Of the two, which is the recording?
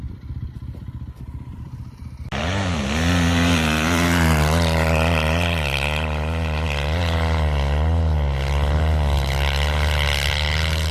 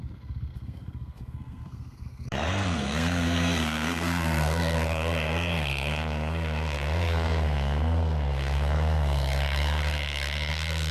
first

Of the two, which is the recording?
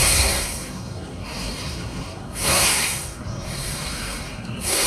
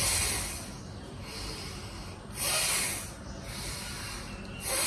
second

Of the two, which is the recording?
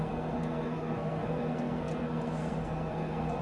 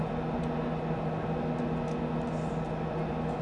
second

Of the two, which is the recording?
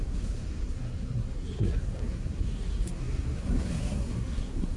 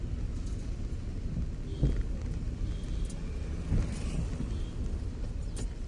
second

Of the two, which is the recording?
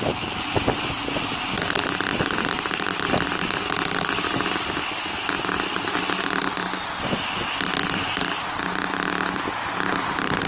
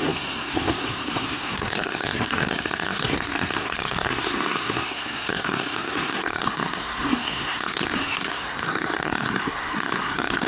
first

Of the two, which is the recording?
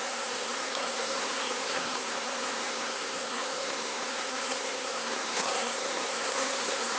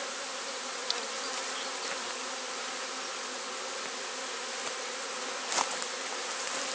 second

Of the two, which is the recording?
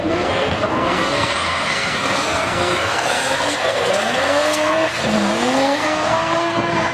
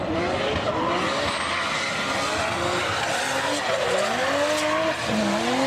second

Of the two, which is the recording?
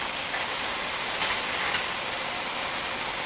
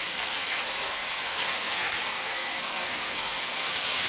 first